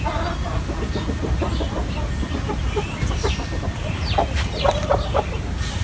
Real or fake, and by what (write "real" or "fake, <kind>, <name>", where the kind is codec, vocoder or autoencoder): real